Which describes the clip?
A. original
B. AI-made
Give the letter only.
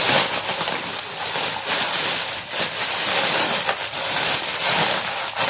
A